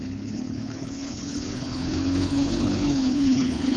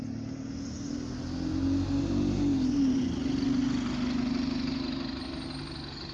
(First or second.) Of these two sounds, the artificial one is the first